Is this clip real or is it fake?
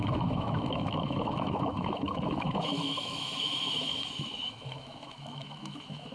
fake